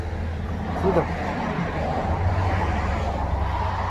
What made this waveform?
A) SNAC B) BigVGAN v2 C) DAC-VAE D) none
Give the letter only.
D